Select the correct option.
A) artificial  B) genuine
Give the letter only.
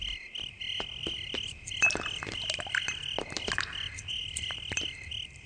B